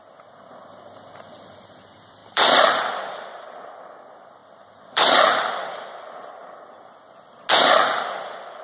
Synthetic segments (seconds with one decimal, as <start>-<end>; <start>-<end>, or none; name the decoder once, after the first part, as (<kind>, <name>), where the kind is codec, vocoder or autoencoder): 2.2-3.8 (vocoder, BigVGAN v2); 4.4-6.9